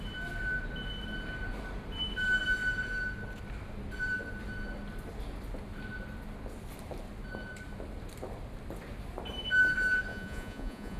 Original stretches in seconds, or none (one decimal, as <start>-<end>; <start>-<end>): 0.0-10.1